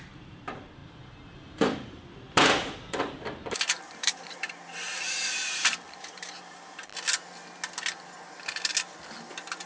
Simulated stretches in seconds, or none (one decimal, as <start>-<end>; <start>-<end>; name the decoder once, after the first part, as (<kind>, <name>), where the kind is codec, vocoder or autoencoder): 0.0-6.9 (vocoder, BigVGAN v2)

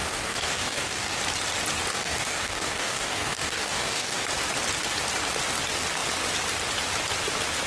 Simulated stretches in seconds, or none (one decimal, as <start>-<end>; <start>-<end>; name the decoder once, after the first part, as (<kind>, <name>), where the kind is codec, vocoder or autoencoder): 0.0-1.2 (codec, DAC); 1.9-4.2

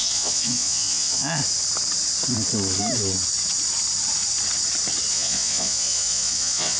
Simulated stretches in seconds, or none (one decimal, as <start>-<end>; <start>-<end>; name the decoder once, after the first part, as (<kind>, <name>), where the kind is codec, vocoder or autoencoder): 0.0-1.4 (vocoder, Vocos); 5.1-6.8

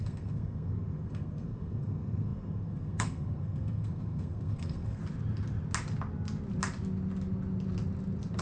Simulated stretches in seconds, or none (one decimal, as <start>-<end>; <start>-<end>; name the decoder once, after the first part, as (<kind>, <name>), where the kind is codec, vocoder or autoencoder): 0.0-5.0 (codec, SNAC)